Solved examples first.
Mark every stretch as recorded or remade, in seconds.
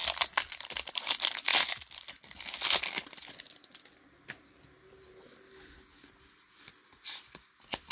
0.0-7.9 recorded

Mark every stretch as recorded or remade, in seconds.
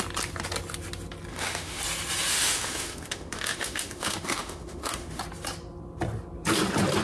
0.0-1.3 recorded; 1.3-1.8 remade; 1.8-2.3 recorded; 2.3-5.2 remade; 5.2-7.0 recorded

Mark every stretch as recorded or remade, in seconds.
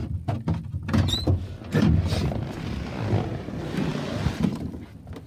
0.0-5.3 recorded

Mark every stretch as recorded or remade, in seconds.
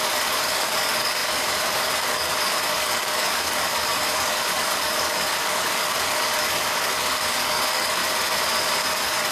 0.0-8.0 remade; 8.0-8.6 recorded; 8.6-9.3 remade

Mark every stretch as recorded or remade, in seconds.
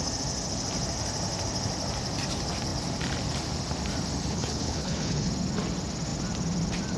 0.0-4.3 recorded; 4.3-5.3 remade; 5.3-7.0 recorded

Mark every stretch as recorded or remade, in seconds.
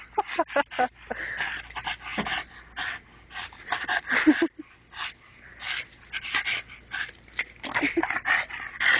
0.0-9.0 recorded